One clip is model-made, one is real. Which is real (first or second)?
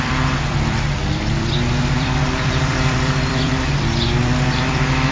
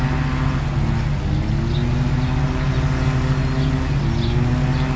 second